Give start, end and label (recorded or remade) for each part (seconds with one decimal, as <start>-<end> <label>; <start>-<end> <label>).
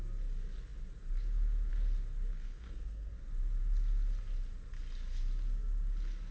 0.0-2.3 recorded; 2.3-3.1 remade; 3.1-6.3 recorded